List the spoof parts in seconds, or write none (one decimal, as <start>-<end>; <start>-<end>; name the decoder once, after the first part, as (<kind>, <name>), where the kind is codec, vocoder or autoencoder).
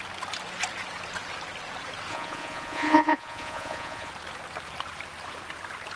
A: 2.1-4.1 (vocoder, Vocos)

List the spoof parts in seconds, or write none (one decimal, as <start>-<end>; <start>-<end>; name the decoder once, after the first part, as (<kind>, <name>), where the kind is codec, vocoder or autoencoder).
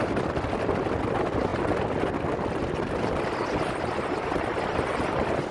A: none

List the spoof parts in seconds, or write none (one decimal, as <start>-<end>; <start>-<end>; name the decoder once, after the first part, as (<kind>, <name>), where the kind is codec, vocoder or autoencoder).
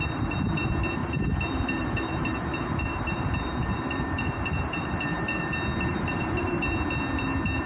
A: 1.0-5.5 (vocoder, BigVGAN v2); 5.9-6.5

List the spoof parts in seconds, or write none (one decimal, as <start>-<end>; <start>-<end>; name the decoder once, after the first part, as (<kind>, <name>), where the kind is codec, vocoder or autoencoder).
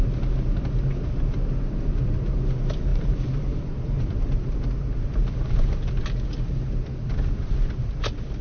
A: 2.9-4.6 (vocoder, BigVGAN v2)